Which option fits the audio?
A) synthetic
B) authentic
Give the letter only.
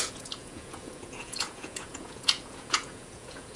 A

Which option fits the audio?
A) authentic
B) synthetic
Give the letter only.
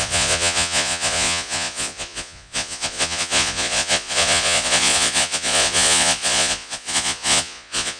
B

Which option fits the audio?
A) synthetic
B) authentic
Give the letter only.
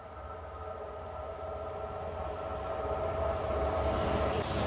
B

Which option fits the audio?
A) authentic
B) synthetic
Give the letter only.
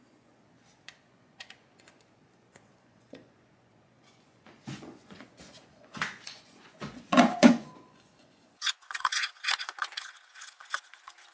B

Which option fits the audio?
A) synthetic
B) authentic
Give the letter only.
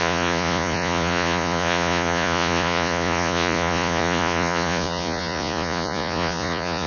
A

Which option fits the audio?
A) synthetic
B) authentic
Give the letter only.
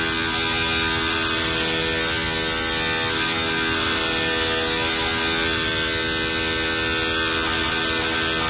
B